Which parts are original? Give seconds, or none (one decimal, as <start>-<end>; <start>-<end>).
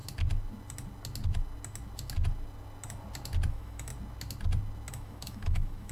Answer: 0.0-3.5; 3.9-4.9